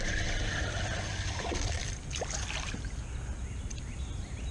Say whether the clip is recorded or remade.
recorded